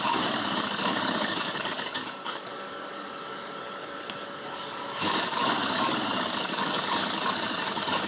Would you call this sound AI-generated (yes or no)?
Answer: yes